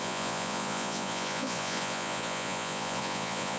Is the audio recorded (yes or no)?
no